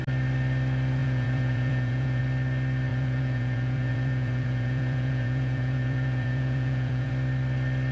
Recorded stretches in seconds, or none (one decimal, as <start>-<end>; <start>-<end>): 0.0-1.0; 2.2-2.9; 7.1-7.9